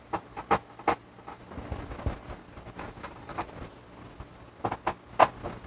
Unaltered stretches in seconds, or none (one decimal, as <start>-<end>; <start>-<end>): 0.0-5.7